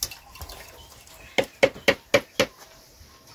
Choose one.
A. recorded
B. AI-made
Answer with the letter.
A